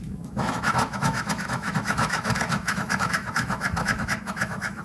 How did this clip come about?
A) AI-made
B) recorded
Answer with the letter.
A